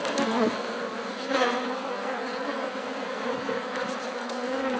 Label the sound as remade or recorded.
remade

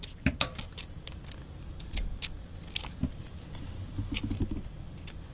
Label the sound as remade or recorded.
recorded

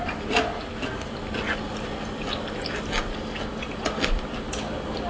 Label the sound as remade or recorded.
recorded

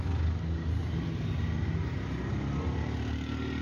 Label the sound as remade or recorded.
recorded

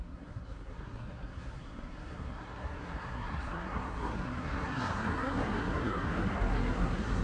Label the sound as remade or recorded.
remade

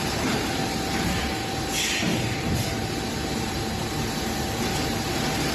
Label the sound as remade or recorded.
remade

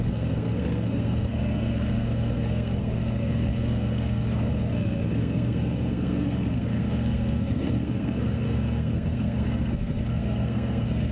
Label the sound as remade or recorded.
remade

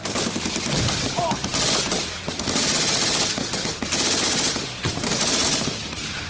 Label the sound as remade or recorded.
recorded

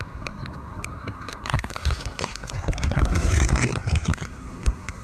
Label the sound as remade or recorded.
remade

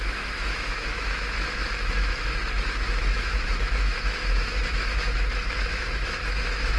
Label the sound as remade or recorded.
remade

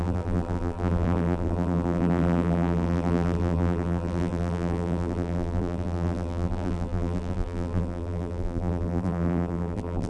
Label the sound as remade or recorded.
remade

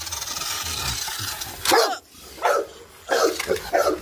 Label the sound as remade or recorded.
recorded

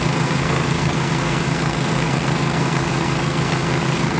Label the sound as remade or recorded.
remade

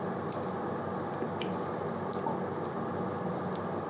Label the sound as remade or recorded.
recorded